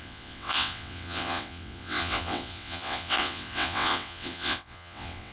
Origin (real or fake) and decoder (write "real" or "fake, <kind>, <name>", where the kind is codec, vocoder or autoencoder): fake, vocoder, WaveNeXt